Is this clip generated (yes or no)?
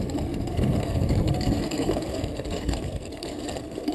yes